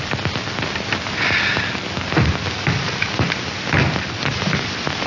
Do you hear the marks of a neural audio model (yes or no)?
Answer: no